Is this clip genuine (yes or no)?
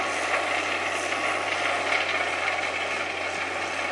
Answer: yes